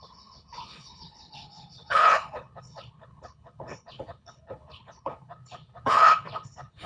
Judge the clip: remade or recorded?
remade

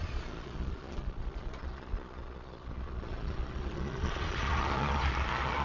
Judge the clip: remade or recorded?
remade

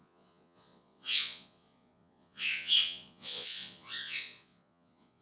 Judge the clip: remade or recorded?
remade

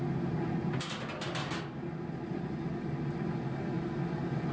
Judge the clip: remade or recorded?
recorded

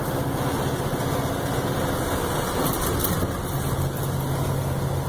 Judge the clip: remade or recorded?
recorded